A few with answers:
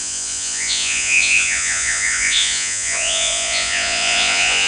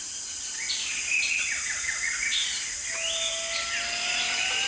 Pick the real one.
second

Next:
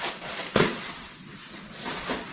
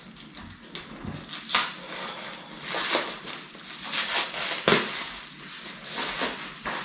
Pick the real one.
second